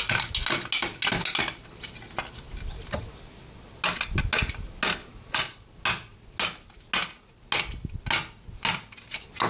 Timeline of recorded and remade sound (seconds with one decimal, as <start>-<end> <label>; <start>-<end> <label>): 0.0-5.0 recorded; 5.0-5.6 remade; 5.6-9.5 recorded